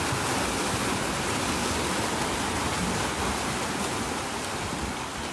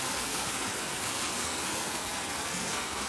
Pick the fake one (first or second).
second